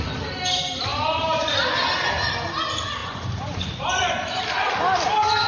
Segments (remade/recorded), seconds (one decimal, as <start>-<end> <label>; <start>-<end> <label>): 0.0-3.0 recorded; 3.0-3.8 remade; 3.8-5.5 recorded